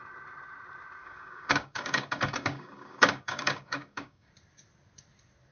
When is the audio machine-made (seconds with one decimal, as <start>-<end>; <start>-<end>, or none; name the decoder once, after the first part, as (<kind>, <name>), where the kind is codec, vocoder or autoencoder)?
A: 1.0-4.3 (codec, DAC)